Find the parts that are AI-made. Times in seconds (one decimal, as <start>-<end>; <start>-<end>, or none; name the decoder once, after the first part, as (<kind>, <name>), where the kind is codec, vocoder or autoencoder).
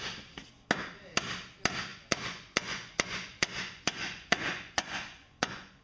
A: 1.9-5.8 (vocoder, Vocos)